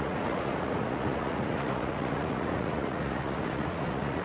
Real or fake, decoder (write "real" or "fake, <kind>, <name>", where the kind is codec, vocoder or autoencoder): fake, vocoder, Vocos